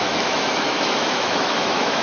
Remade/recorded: remade